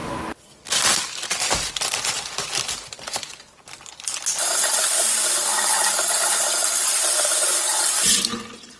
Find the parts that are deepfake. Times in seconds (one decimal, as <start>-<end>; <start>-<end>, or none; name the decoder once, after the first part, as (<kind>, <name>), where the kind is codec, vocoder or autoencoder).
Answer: 0.0-2.5 (vocoder, BigVGAN v2); 5.5-6.4